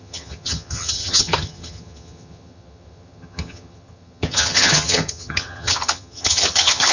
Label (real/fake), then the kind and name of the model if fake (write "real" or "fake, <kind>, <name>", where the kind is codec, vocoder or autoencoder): fake, vocoder, HiFi-GAN